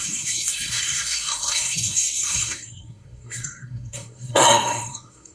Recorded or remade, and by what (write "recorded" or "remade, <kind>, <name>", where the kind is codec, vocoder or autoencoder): remade, codec, SNAC